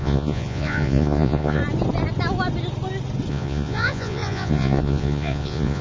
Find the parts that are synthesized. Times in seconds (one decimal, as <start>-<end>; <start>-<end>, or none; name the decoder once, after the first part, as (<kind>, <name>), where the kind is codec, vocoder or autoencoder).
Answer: 0.0-1.6 (vocoder, Vocos); 3.3-5.8